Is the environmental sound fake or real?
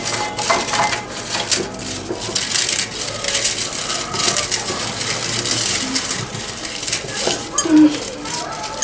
real